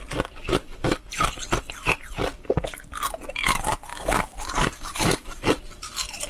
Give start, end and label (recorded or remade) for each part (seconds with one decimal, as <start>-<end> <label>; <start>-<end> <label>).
0.0-0.4 recorded; 0.4-1.0 remade; 1.0-2.3 recorded; 2.3-2.9 remade; 2.9-3.9 recorded; 3.9-5.6 remade; 5.6-6.3 recorded